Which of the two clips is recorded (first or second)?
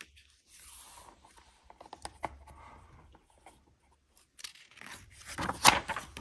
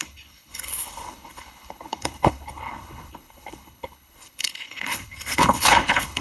first